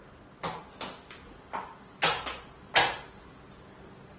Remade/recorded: recorded